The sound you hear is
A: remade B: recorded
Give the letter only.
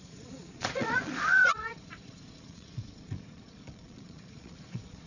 A